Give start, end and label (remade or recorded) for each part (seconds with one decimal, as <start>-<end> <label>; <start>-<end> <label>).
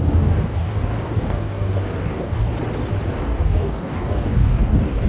0.0-2.5 remade; 2.5-3.1 recorded; 3.1-5.1 remade